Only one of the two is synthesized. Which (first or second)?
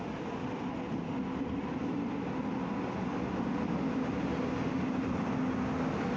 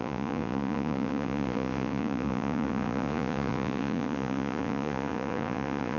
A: second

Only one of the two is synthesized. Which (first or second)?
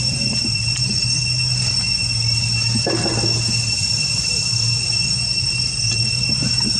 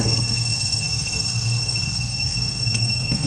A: second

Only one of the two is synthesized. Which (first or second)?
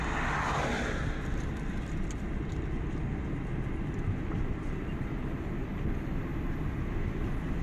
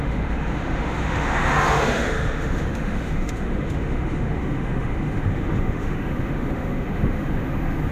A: second